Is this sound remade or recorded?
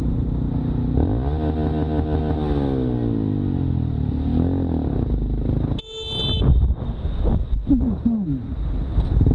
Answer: recorded